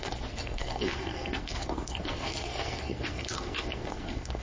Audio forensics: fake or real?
fake